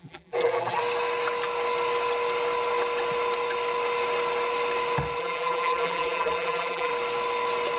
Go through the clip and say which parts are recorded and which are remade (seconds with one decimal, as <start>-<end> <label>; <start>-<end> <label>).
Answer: 0.0-0.8 remade; 0.8-5.2 recorded; 5.2-6.9 remade; 6.9-7.8 recorded